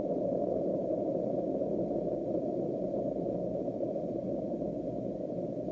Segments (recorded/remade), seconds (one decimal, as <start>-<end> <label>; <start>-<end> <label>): 0.0-5.7 recorded